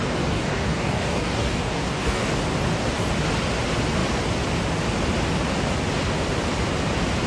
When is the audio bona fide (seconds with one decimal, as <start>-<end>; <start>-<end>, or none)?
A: 2.3-7.3